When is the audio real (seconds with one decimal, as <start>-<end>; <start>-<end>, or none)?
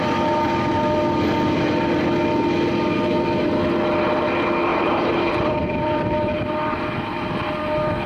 0.0-4.7; 6.8-8.1